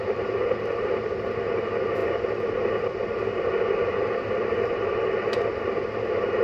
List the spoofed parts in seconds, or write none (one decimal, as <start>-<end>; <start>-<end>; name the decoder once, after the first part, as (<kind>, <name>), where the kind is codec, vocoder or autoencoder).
none